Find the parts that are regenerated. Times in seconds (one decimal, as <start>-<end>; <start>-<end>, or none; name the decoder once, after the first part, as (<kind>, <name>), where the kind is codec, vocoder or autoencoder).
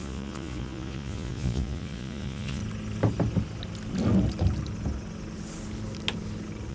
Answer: 0.0-2.6 (vocoder, Vocos)